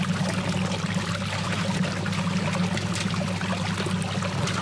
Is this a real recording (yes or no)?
yes